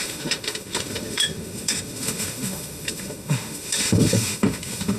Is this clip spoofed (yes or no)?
yes